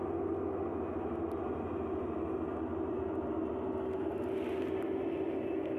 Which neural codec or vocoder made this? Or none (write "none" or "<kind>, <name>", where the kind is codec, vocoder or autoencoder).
none